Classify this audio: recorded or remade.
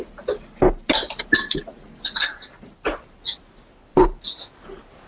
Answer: recorded